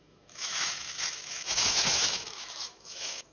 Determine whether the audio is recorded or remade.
remade